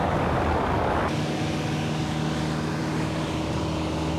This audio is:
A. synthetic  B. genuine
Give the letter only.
A